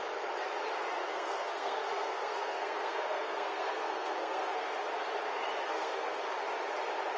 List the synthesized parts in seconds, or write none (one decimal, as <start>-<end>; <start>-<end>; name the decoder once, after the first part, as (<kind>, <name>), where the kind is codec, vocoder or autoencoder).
1.0-4.8 (codec, SNAC); 5.7-6.2